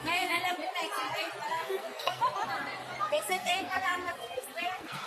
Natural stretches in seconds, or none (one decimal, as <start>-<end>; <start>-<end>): 0.4-1.5; 2.2-3.0